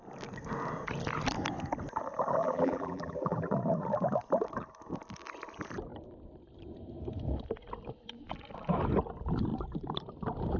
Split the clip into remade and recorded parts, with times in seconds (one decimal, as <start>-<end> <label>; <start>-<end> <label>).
0.0-2.4 recorded; 2.4-3.5 remade; 3.5-10.6 recorded